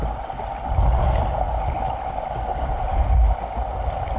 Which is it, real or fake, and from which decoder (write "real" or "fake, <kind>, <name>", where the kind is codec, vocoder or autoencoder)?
real